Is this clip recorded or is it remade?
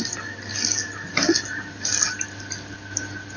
recorded